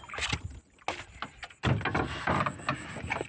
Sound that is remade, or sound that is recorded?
recorded